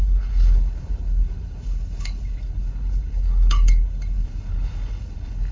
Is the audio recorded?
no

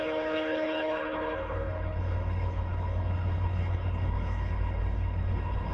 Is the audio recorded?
no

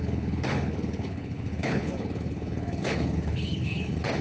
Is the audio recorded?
no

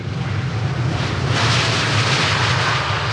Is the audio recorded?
yes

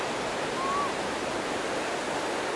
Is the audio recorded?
yes